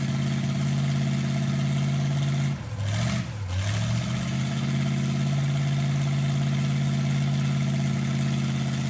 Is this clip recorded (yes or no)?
yes